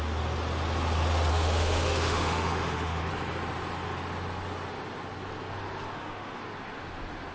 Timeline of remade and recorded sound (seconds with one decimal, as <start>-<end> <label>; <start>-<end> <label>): 0.0-1.3 recorded; 1.3-3.1 remade; 3.1-5.9 recorded; 5.9-6.4 remade; 6.4-7.3 recorded